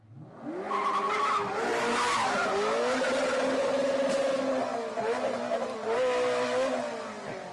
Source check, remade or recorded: recorded